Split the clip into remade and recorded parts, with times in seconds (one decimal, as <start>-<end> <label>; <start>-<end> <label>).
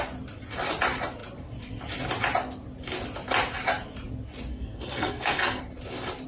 0.0-4.5 recorded; 4.5-5.6 remade; 5.6-6.3 recorded